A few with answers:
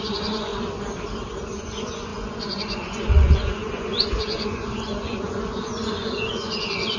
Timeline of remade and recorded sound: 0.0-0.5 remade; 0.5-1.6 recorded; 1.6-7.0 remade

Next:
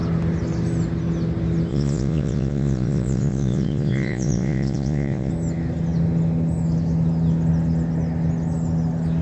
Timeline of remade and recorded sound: 0.0-1.7 recorded; 1.7-5.3 remade; 5.3-9.2 recorded

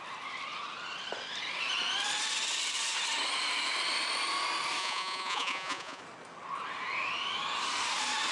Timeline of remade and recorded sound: 0.0-4.8 recorded; 4.8-6.0 remade; 6.0-8.3 recorded